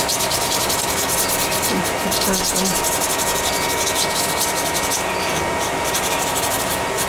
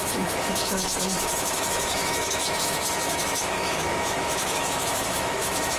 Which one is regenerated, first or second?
second